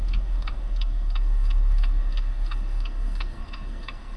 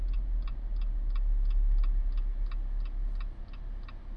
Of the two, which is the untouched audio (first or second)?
second